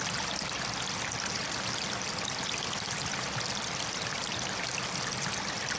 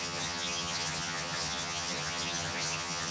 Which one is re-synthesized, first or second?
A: second